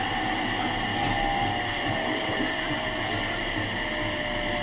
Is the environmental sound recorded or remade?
recorded